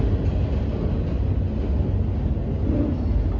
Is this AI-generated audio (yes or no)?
no